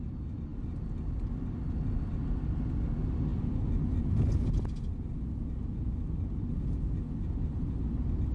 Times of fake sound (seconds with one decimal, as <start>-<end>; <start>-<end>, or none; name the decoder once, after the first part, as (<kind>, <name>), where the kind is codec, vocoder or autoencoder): none

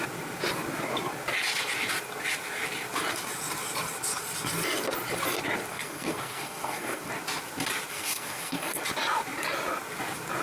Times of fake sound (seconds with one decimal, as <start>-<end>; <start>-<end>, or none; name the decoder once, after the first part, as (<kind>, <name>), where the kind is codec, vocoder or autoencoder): 5.7-7.1 (codec, SNAC); 7.9-8.8

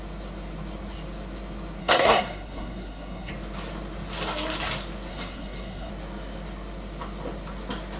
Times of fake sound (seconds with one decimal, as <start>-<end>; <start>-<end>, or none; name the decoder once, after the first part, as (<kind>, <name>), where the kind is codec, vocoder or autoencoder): 1.8-3.3 (codec, SNAC); 5.1-5.9

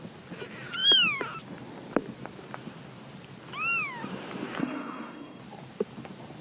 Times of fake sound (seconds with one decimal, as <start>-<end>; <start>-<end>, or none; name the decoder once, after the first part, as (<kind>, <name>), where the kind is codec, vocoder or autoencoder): 4.6-5.4 (codec, SNAC)

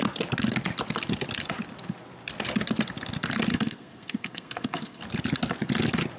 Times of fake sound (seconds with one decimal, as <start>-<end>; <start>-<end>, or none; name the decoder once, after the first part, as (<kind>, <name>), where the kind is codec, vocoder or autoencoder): 3.5-5.0 (codec, SNAC)

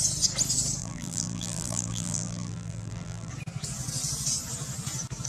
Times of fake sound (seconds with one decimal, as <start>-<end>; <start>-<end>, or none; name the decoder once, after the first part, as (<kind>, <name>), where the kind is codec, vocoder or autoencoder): 0.8-3.3 (vocoder, BigVGAN v2)